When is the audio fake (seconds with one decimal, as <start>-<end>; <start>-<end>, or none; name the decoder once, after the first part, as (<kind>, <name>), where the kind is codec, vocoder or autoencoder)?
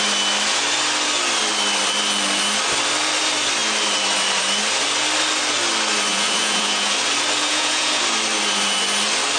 6.1-6.9 (vocoder, Vocos); 7.4-8.0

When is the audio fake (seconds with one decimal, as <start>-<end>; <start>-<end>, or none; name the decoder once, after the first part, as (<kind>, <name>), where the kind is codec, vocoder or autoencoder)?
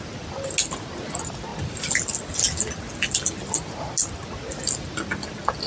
none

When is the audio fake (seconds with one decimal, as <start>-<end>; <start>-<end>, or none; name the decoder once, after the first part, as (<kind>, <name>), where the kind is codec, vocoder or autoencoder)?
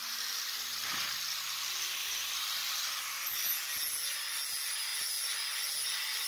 0.0-1.1 (vocoder, BigVGAN v2); 2.6-3.2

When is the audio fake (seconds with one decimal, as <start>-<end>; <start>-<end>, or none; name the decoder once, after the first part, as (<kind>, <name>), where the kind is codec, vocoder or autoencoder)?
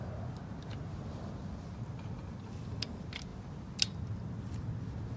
0.7-2.5 (vocoder, BigVGAN v2)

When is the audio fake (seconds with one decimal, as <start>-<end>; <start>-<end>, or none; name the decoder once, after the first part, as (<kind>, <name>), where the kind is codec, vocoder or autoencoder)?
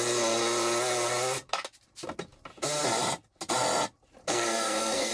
4.3-5.1 (codec, SNAC)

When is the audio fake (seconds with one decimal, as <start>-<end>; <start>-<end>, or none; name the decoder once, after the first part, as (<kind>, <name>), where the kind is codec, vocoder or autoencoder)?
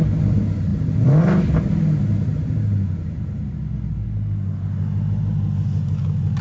none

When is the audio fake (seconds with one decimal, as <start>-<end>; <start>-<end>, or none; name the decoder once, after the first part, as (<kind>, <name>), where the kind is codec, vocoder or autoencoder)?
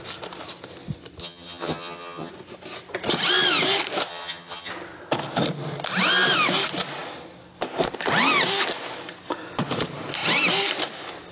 1.2-2.3 (vocoder, HiFi-GAN); 4.1-4.7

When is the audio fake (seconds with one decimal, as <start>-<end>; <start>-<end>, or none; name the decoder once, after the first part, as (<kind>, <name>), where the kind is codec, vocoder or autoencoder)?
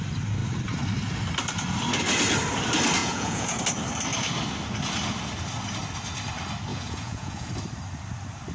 3.0-3.6 (vocoder, Vocos); 6.7-7.5